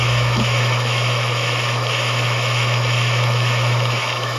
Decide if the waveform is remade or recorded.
remade